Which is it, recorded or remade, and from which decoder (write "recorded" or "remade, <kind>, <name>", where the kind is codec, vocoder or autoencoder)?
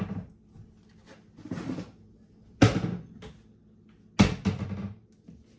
recorded